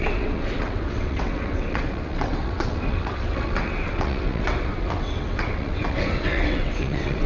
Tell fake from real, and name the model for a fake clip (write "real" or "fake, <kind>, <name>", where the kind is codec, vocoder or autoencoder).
fake, vocoder, WaveNeXt